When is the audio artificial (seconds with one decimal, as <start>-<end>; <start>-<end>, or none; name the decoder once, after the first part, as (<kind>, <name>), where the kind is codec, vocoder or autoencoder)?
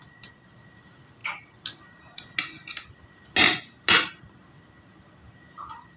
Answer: none